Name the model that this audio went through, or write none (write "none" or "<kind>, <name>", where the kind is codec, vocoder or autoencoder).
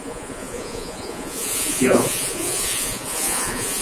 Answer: vocoder, Vocos